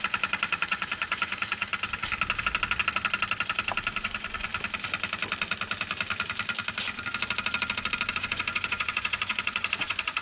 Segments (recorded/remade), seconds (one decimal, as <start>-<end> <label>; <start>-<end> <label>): 0.0-1.7 remade; 1.7-4.0 recorded; 4.0-4.5 remade; 4.5-8.1 recorded; 8.1-10.2 remade